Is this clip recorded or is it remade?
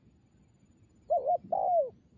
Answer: recorded